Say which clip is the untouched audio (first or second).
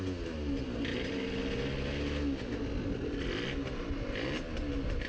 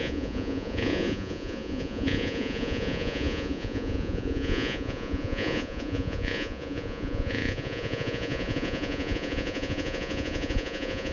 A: first